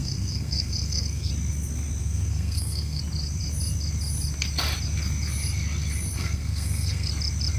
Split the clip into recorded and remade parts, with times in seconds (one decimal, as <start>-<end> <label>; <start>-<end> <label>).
0.0-1.3 remade; 1.3-2.0 recorded; 2.0-3.0 remade; 3.0-6.2 recorded; 6.2-7.1 remade; 7.1-7.6 recorded